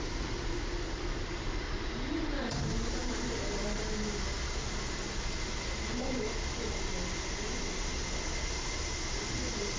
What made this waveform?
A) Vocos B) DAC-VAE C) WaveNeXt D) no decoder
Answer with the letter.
D